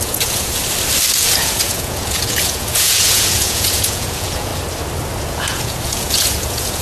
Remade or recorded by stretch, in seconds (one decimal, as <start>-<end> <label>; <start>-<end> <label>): 0.0-0.6 remade; 0.6-1.1 recorded; 1.1-4.5 remade; 4.5-5.2 recorded; 5.2-6.8 remade